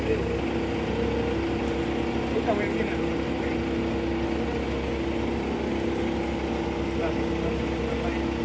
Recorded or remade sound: recorded